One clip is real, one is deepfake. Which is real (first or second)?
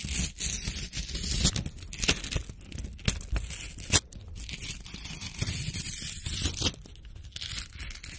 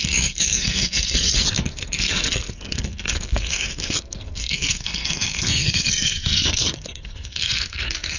first